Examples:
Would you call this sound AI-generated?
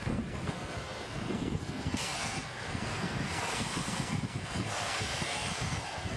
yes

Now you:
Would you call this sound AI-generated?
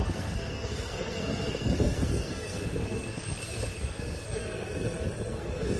yes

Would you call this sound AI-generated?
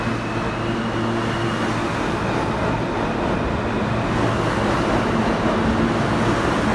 no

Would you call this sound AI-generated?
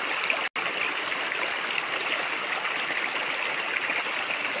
no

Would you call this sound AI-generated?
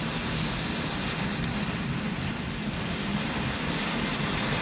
no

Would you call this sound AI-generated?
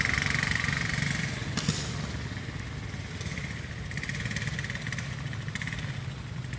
no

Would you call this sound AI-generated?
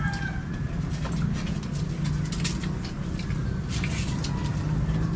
no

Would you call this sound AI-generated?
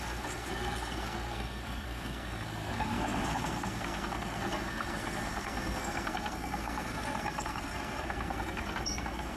yes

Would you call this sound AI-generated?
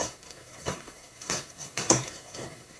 yes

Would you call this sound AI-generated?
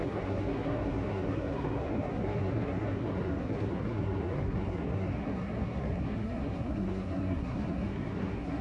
yes